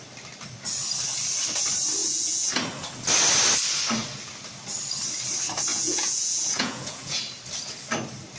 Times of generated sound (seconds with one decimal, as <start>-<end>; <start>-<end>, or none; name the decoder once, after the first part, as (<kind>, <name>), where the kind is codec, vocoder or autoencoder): 2.0-2.5 (vocoder, Vocos); 5.7-7.2